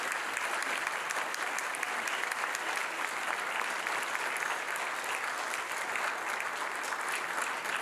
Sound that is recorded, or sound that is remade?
recorded